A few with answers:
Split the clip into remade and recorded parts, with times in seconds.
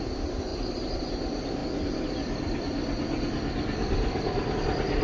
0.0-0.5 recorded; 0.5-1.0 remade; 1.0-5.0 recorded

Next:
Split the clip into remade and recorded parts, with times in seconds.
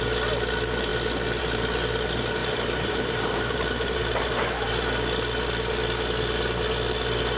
0.0-2.4 recorded; 2.4-4.7 remade; 4.7-7.4 recorded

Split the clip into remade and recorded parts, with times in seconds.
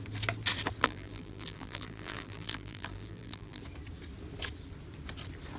0.0-0.8 recorded; 0.8-3.6 remade; 3.6-5.6 recorded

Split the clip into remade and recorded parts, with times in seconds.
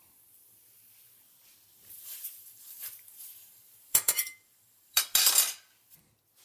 0.0-1.7 recorded; 1.7-5.0 remade; 5.0-6.4 recorded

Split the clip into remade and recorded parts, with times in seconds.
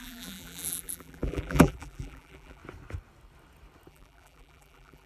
0.0-2.6 remade; 2.6-3.9 recorded; 3.9-5.1 remade